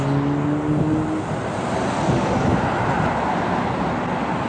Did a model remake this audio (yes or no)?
no